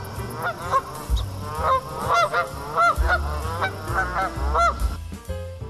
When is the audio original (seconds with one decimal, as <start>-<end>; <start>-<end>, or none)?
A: 0.0-5.7